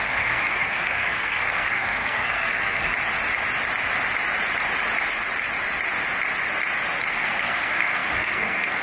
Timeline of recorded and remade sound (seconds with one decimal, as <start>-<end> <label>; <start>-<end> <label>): 0.0-2.9 remade; 2.9-7.1 recorded; 7.1-8.8 remade